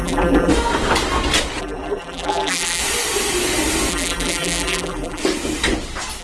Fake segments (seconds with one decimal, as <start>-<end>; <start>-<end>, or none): 0.0-0.5; 1.6-2.8; 3.9-5.2